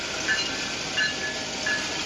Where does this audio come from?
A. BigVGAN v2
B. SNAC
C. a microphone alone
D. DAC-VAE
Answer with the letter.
C